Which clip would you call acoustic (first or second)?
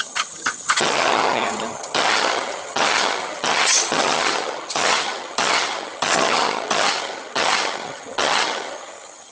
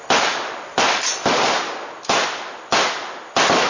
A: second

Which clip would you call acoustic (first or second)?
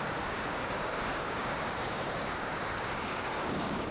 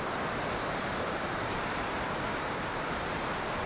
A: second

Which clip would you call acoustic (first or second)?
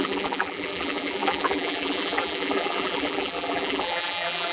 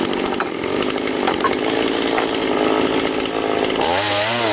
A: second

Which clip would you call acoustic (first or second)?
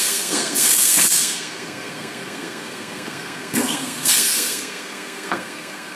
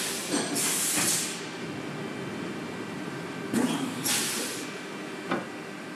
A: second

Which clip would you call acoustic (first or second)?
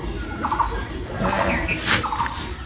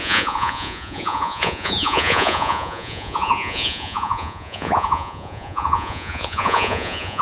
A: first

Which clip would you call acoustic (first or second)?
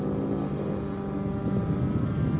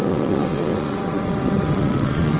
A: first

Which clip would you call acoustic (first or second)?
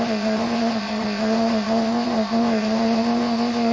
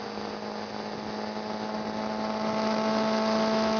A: second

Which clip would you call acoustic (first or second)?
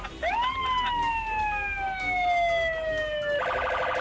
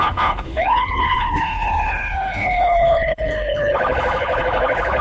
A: first